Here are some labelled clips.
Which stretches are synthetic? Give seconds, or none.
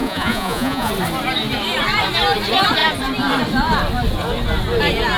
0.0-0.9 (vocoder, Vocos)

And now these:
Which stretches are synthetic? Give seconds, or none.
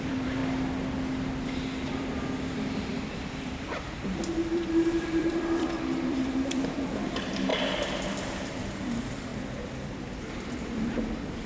0.0-0.4 (vocoder, BigVGAN v2); 1.9-11.5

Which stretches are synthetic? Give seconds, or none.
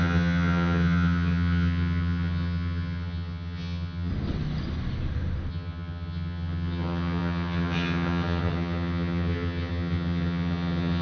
0.0-4.1 (vocoder, HiFi-GAN); 5.5-11.0